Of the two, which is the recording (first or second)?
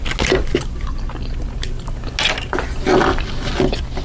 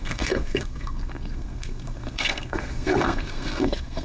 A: first